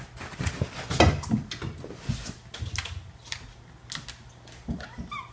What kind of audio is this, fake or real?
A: real